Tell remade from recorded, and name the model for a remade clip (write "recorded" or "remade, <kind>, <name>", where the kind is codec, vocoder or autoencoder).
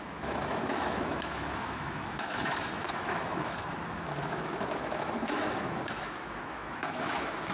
remade, autoencoder, DAC-VAE